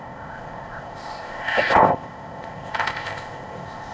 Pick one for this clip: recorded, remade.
remade